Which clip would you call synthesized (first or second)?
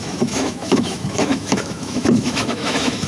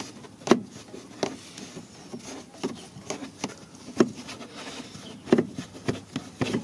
first